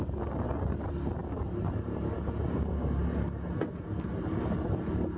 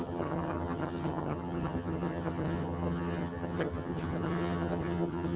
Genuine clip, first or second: first